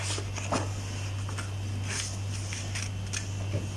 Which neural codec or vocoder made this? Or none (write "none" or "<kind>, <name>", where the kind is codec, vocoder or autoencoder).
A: none